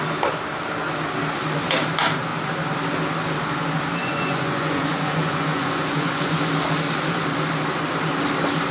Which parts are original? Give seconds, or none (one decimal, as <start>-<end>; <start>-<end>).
0.0-4.0; 6.4-8.7